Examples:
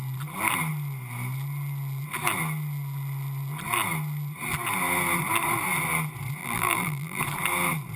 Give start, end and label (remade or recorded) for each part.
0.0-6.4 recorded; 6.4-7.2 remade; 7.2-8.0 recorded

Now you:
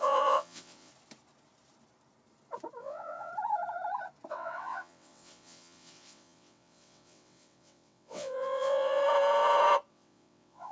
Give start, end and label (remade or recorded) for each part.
0.0-0.9 remade; 0.9-2.8 recorded; 2.8-3.3 remade; 3.3-4.3 recorded; 4.3-9.0 remade; 9.0-9.9 recorded; 9.9-10.7 remade

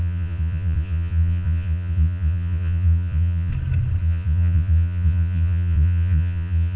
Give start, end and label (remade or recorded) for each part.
0.0-3.5 remade; 3.5-4.0 recorded; 4.0-6.8 remade

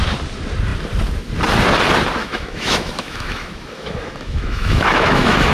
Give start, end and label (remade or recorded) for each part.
0.0-2.2 recorded; 2.2-5.5 remade

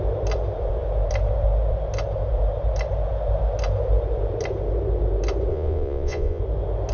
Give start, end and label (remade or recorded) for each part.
0.0-5.5 recorded; 5.5-6.4 remade; 6.4-6.9 recorded